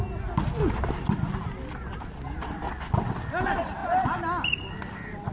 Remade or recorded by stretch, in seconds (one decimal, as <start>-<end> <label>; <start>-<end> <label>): 0.0-0.6 recorded; 0.6-1.1 remade; 1.1-1.9 recorded; 1.9-2.6 remade; 2.6-5.3 recorded

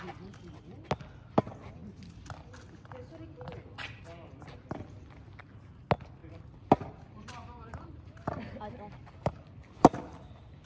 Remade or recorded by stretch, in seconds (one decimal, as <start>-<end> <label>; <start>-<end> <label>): 0.0-6.2 recorded; 6.2-10.0 remade; 10.0-10.7 recorded

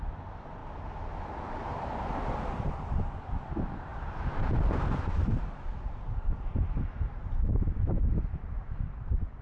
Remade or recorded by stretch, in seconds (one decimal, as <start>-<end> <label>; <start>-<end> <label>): 0.0-0.6 remade; 0.6-1.5 recorded; 1.5-9.4 remade

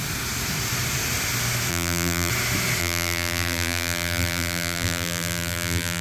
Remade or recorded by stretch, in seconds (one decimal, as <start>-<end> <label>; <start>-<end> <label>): 0.0-1.7 recorded; 1.7-2.3 remade; 2.3-2.8 recorded; 2.8-6.0 remade

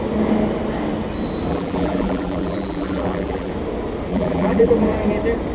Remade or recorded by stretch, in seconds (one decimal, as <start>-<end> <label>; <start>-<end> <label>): 0.0-1.5 recorded; 1.5-3.5 remade; 3.5-4.1 recorded; 4.1-4.7 remade; 4.7-5.5 recorded

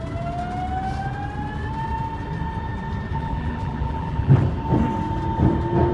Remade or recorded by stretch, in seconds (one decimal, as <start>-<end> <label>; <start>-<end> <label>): 0.0-3.1 recorded; 3.1-4.4 remade; 4.4-5.9 recorded

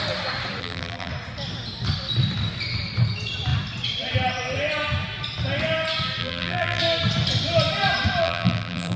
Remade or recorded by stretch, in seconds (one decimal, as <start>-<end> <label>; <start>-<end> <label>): 0.0-0.6 recorded; 0.6-1.1 remade; 1.1-6.2 recorded; 6.2-6.8 remade; 6.8-8.2 recorded; 8.2-9.0 remade